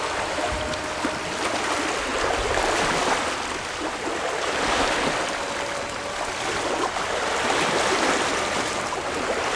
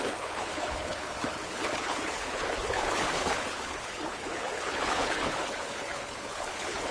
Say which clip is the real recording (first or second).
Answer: first